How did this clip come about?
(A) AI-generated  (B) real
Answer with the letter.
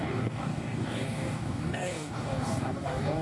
A